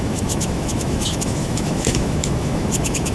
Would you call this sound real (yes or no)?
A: no